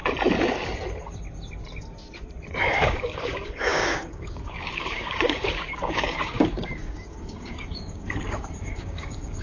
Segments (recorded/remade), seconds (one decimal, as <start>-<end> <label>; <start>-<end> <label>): 0.0-2.6 recorded; 2.6-9.4 remade